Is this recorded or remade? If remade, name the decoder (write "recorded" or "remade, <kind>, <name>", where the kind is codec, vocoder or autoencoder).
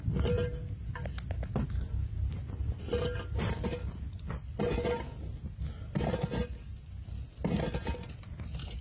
recorded